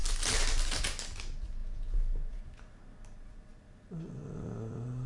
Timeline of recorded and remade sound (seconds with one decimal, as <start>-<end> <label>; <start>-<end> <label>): 0.0-1.6 recorded; 1.6-2.4 remade; 2.4-5.1 recorded